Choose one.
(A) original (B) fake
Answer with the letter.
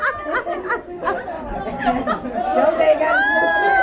A